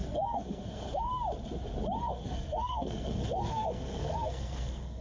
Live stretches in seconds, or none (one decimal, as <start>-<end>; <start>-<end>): 1.1-2.0